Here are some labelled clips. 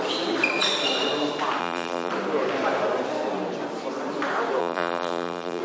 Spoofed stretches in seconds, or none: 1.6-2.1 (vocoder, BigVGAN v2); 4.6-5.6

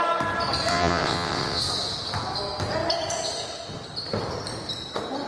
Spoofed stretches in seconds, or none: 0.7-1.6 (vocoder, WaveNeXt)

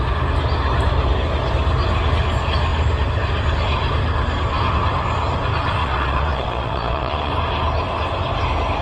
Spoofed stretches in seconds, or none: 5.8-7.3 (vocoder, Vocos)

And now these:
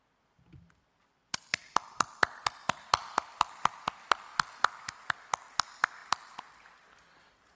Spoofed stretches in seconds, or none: none

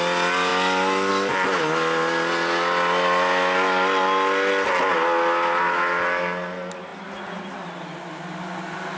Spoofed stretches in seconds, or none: none